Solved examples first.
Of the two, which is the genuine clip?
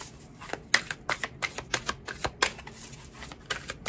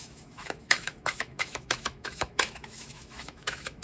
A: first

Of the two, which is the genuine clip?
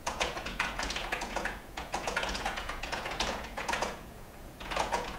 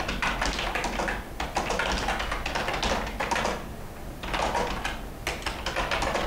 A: second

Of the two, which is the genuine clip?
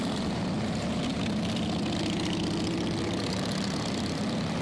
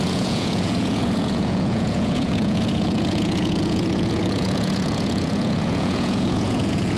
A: first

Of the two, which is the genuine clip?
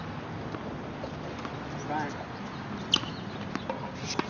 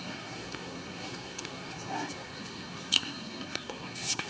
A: first